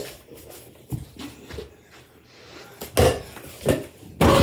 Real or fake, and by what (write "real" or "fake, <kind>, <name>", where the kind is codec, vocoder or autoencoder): real